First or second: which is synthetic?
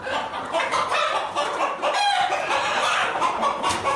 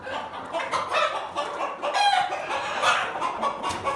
first